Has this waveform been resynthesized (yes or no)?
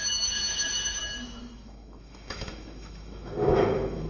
yes